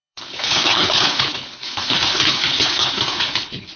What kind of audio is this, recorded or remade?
remade